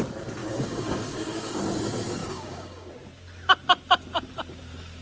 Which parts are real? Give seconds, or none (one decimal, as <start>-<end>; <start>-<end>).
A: 0.0-0.4; 1.6-2.2; 2.9-5.0